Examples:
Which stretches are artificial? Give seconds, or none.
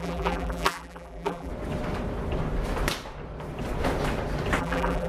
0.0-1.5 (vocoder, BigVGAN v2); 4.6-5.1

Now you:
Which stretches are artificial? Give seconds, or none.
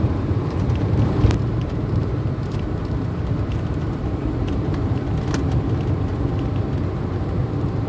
0.0-6.1 (vocoder, BigVGAN v2); 7.4-7.9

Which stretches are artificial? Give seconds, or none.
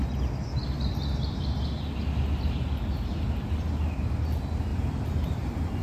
4.7-5.8 (vocoder, BigVGAN v2)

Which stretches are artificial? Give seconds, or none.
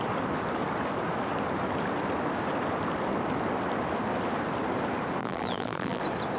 5.2-6.0 (vocoder, BigVGAN v2)